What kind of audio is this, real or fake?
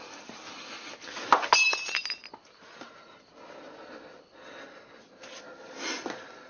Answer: real